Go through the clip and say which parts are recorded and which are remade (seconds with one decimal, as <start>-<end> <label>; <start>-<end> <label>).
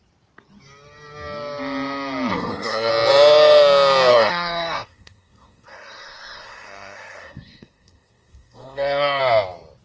0.0-2.3 recorded; 2.3-2.9 remade; 2.9-4.1 recorded; 4.1-9.2 remade; 9.2-9.8 recorded